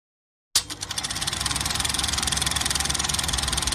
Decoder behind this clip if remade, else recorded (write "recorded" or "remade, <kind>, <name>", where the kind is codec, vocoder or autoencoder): recorded